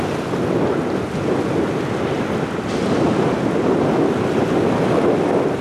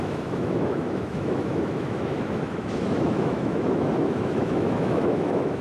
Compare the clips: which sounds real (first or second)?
first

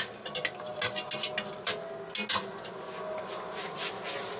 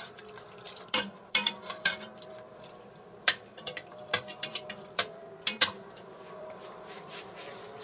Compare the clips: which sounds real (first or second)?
first